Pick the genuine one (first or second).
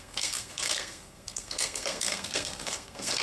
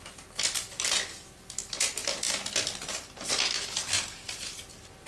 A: second